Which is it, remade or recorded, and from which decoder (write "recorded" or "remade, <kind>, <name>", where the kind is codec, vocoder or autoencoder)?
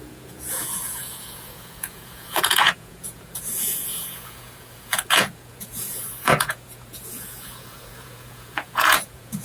remade, vocoder, Vocos